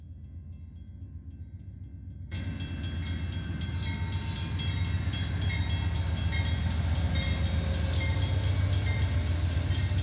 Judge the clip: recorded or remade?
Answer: recorded